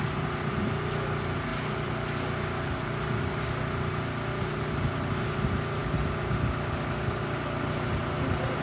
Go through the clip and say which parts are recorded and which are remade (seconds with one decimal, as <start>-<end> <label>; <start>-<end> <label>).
0.0-8.6 recorded